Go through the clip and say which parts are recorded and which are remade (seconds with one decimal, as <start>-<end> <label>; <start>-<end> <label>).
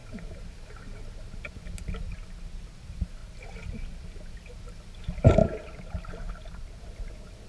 0.0-5.4 recorded; 5.4-6.8 remade; 6.8-7.5 recorded